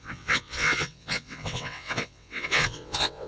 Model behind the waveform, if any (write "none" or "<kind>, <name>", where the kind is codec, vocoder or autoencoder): vocoder, WaveNeXt